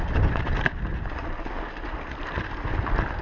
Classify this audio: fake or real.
real